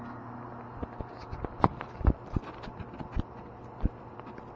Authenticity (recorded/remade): recorded